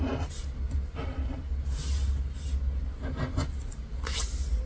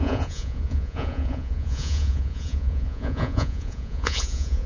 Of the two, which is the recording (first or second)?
first